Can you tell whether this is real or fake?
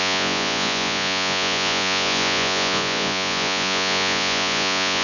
fake